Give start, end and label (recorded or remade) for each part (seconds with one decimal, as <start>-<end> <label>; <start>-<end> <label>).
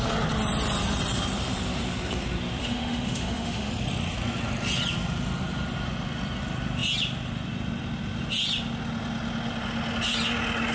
0.0-2.6 recorded; 2.6-3.7 remade; 3.7-10.7 recorded